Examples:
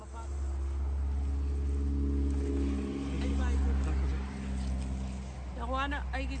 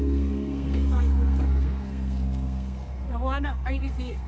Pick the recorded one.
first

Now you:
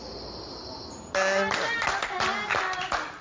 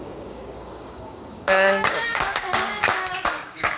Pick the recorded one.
first